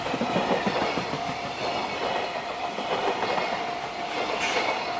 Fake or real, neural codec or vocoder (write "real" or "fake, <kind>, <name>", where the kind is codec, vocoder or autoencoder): real